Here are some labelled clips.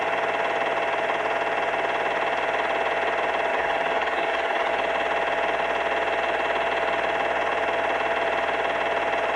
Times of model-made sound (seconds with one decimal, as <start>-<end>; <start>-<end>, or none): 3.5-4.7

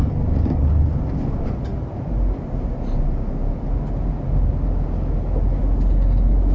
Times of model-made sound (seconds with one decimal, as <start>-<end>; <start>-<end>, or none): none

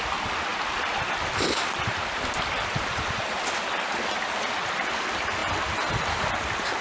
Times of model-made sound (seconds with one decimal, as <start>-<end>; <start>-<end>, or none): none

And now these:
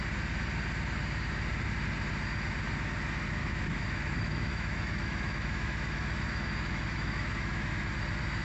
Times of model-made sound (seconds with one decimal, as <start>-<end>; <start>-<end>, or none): 3.4-7.7

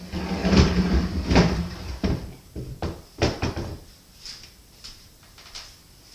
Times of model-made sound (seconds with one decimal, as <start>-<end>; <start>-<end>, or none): 0.4-2.8

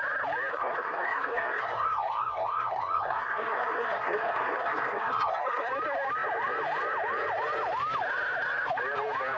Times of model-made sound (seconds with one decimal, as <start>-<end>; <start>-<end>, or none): 0.5-5.7